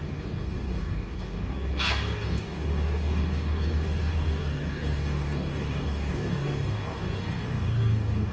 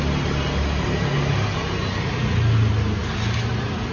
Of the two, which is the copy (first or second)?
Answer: first